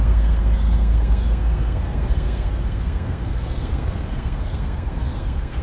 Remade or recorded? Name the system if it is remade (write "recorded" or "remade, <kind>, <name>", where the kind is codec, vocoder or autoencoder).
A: remade, codec, SNAC